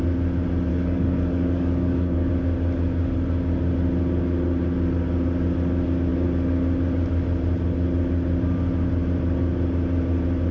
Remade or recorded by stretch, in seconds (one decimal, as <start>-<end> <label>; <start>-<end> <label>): 0.0-0.7 recorded; 0.7-2.3 remade; 2.3-10.5 recorded